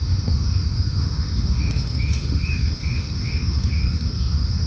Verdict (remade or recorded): remade